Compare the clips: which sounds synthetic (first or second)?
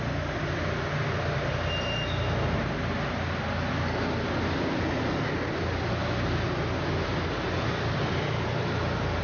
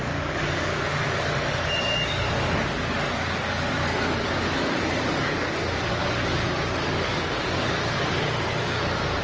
second